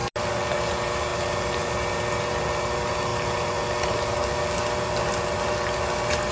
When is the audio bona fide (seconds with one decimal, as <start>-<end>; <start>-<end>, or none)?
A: 0.0-6.3